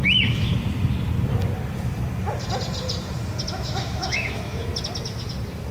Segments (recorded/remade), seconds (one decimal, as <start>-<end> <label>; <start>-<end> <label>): 0.0-0.5 remade; 0.5-3.5 recorded; 3.5-4.7 remade; 4.7-5.7 recorded